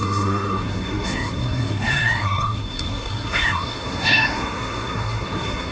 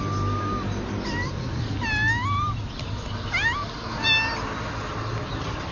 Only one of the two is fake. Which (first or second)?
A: first